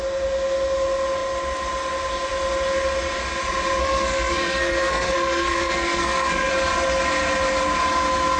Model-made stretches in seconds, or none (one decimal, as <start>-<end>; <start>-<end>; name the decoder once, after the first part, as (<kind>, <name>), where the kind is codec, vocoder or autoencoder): 3.8-6.5 (codec, SNAC)